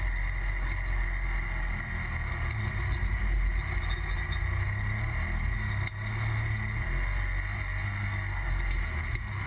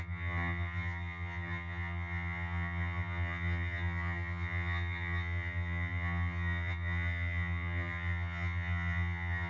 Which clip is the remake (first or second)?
second